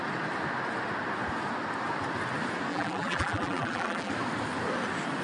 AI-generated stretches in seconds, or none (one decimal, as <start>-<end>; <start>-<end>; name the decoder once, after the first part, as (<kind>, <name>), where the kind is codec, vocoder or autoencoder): 2.7-4.1 (vocoder, BigVGAN v2)